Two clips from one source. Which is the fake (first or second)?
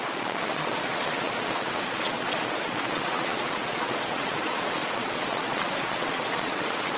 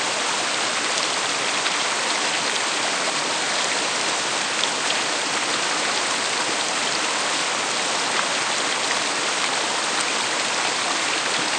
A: first